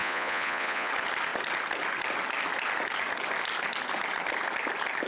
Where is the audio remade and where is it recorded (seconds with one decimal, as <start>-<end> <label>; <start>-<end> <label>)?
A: 0.0-0.9 remade; 0.9-5.1 recorded